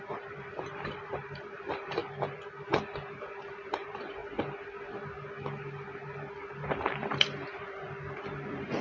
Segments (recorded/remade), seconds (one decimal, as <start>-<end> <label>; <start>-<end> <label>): 0.0-2.0 remade; 2.0-3.2 recorded; 3.2-4.2 remade; 4.2-6.5 recorded; 6.5-8.8 remade